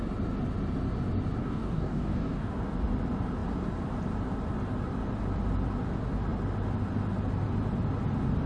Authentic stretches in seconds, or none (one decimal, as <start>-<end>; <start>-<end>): 0.0-1.4; 2.5-8.5